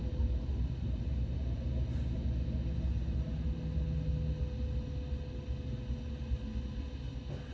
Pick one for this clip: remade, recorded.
recorded